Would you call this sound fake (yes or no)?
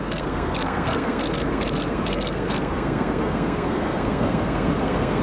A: yes